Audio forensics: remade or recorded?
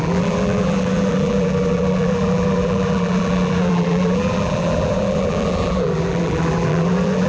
remade